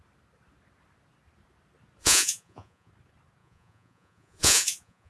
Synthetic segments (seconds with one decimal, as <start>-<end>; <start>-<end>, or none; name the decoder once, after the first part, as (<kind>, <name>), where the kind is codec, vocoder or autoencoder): 2.0-2.9 (vocoder, Vocos); 3.4-5.1